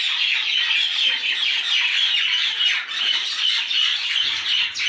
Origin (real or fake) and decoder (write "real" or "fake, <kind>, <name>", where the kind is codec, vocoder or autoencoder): real